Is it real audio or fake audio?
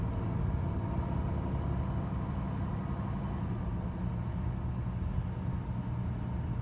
real